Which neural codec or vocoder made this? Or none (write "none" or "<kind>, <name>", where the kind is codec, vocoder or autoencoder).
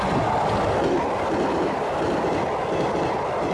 none